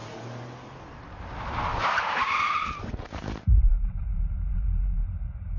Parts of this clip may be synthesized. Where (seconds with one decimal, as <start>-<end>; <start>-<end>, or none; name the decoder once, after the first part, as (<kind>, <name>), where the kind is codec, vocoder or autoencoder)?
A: 1.7-5.1 (vocoder, BigVGAN v2)